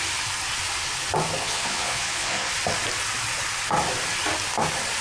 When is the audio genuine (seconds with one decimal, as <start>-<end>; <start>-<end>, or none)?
0.0-1.4; 2.5-5.0